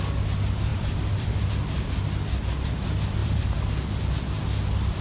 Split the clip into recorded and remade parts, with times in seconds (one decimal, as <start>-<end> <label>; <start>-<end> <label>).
0.0-0.7 recorded; 0.7-1.5 remade; 1.5-3.2 recorded; 3.2-3.7 remade; 3.7-5.0 recorded